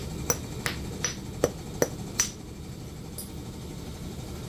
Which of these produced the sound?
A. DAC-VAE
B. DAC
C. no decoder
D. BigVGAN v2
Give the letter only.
C